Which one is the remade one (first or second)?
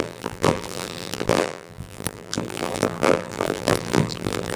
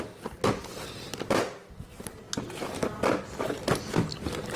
first